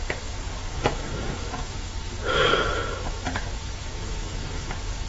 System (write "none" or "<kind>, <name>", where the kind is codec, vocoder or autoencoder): codec, DAC